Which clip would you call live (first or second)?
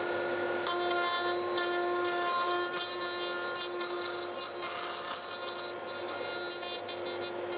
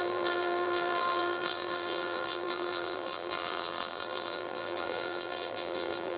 first